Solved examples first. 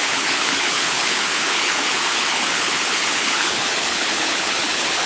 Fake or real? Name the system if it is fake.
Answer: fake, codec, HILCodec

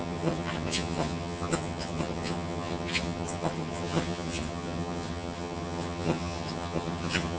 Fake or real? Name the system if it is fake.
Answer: fake, vocoder, HiFi-GAN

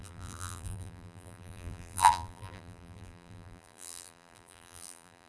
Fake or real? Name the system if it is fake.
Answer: fake, vocoder, BigVGAN v2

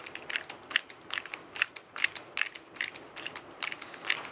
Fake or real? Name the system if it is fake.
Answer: real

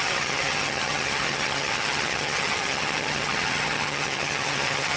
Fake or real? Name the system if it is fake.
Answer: fake, vocoder, HiFi-GAN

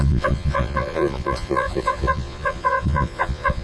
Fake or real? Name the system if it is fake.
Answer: fake, vocoder, Vocos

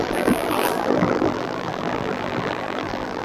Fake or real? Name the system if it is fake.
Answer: fake, vocoder, BigVGAN v2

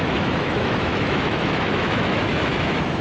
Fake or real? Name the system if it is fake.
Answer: fake, autoencoder, DAC-VAE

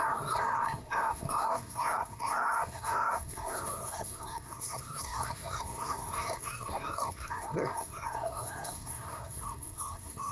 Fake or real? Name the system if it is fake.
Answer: fake, codec, SNAC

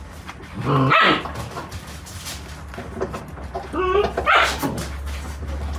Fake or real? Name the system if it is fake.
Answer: real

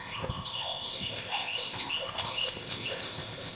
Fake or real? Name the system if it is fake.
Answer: fake, codec, ZipCodec